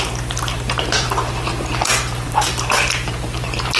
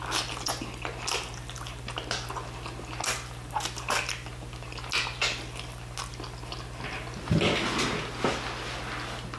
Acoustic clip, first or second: second